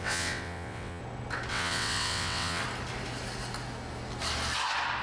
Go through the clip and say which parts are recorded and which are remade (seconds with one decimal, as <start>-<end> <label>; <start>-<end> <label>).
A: 0.0-1.0 remade; 1.0-1.5 recorded; 1.5-2.6 remade; 2.6-5.0 recorded